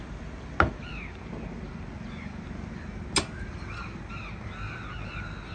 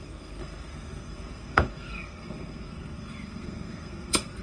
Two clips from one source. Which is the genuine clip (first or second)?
first